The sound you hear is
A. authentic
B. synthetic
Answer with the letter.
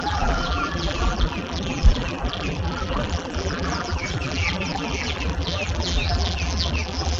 B